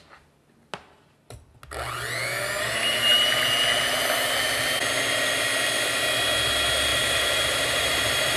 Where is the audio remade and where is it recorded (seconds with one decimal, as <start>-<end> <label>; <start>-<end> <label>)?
0.0-6.9 recorded; 6.9-8.4 remade